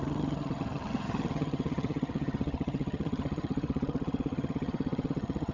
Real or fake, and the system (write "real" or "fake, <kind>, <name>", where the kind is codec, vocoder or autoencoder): fake, vocoder, HiFi-GAN